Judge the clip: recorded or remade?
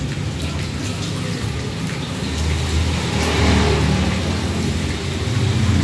recorded